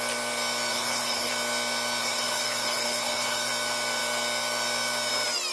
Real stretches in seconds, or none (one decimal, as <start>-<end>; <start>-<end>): 0.0-0.7; 1.3-2.0; 3.5-5.5